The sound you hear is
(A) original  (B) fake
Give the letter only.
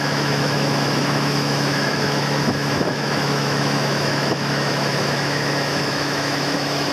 B